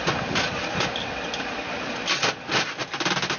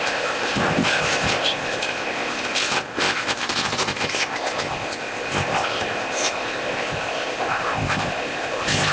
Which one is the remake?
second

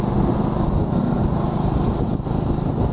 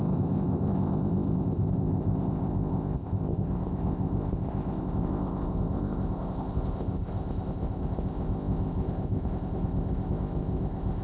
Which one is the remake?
second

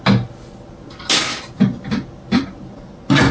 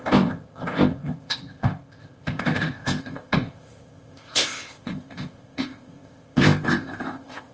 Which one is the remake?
second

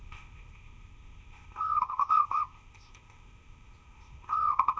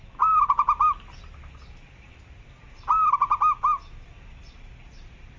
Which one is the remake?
first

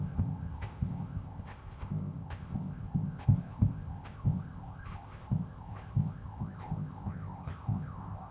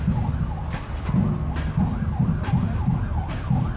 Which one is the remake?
first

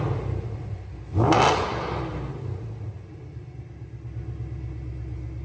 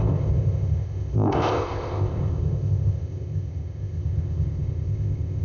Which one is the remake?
second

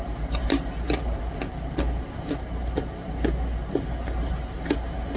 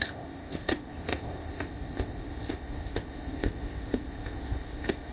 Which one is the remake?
second